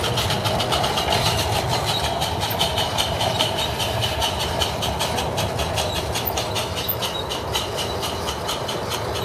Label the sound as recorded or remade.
recorded